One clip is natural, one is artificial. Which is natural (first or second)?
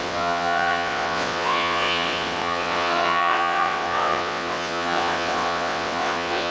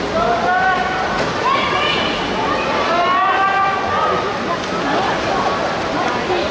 second